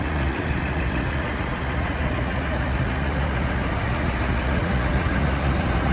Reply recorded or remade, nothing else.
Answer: remade